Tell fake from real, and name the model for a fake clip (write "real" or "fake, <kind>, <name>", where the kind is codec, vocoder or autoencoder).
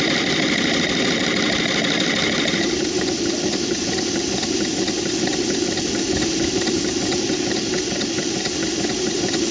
real